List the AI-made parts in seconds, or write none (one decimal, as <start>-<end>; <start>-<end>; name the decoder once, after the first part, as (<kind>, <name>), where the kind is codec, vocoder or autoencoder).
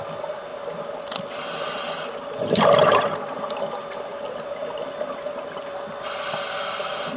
none